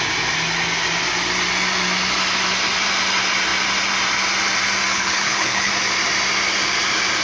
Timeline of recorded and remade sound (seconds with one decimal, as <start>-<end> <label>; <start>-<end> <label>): 0.0-4.9 recorded; 4.9-5.7 remade; 5.7-7.2 recorded